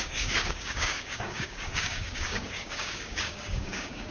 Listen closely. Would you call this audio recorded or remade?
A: remade